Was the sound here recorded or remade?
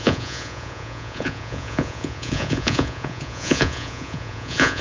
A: remade